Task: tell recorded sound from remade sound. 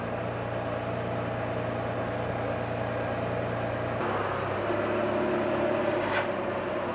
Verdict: recorded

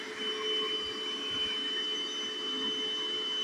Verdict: recorded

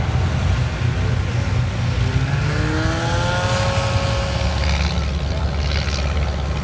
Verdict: recorded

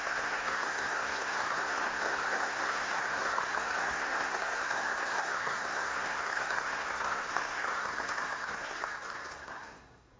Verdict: remade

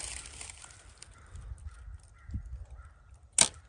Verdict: recorded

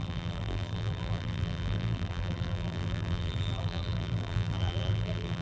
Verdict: remade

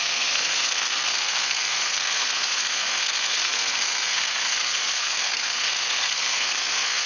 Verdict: remade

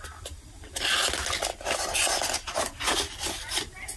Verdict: recorded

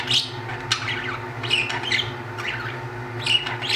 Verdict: recorded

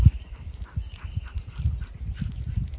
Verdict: recorded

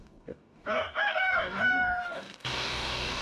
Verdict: remade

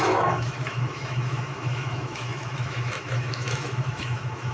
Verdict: remade